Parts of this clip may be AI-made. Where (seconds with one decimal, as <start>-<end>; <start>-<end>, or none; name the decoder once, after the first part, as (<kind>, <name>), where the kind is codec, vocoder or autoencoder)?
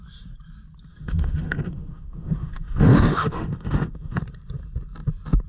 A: 0.9-4.2 (autoencoder, DAC-VAE)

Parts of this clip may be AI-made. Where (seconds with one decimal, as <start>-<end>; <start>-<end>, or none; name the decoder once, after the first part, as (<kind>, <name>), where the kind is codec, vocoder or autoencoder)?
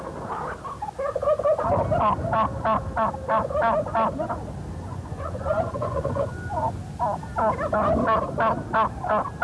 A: 4.9-6.3 (vocoder, Vocos)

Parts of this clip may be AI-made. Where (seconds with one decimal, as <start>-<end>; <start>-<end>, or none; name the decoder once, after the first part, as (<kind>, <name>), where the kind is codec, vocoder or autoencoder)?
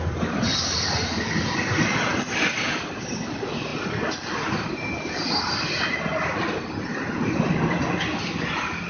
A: none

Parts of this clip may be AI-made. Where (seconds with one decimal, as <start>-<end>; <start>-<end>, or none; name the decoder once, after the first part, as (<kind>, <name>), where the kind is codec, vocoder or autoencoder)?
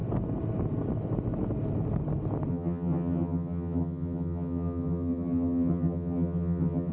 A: 2.5-6.9 (vocoder, HiFi-GAN)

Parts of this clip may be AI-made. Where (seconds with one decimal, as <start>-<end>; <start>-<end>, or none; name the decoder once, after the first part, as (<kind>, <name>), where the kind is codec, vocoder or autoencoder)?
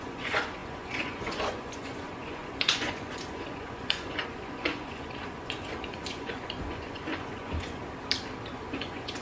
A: 0.0-7.8 (vocoder, Vocos); 8.5-9.2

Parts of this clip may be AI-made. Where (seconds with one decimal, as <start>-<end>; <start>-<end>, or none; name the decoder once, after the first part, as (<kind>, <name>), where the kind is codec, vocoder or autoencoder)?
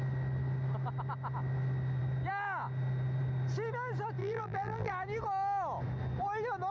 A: 4.2-4.9 (vocoder, BigVGAN v2)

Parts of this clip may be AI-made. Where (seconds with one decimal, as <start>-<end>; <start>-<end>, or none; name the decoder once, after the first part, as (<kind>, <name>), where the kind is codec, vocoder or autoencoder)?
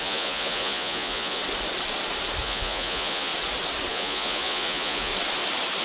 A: 0.0-1.4 (vocoder, Vocos); 2.4-3.3; 3.9-5.1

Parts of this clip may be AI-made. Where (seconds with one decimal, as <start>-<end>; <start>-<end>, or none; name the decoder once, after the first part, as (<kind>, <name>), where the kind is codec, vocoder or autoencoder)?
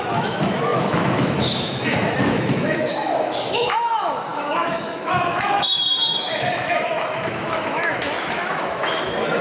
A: 0.0-9.4 (autoencoder, DAC-VAE)